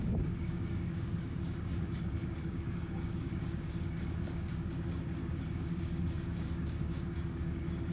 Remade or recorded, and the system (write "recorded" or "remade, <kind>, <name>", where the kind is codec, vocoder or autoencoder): remade, codec, DAC